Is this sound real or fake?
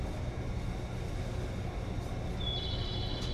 real